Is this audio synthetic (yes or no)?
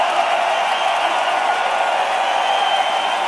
yes